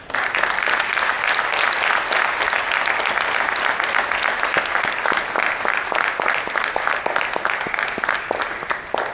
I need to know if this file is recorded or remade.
recorded